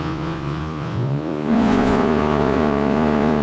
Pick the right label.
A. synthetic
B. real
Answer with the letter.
A